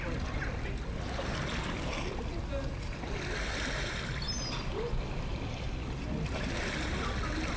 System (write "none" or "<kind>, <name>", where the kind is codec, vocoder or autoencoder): none